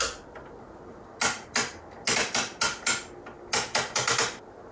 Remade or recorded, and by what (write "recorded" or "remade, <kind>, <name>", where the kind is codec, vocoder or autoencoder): recorded